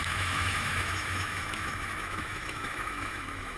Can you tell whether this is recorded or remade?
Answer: remade